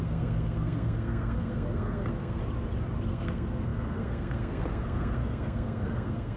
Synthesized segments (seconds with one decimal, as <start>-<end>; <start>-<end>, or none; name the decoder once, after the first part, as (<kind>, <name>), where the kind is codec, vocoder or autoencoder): 0.0-2.4 (codec, SNAC); 3.1-6.4